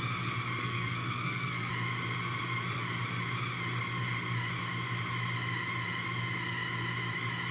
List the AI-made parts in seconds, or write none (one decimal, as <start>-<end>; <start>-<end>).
0.6-1.7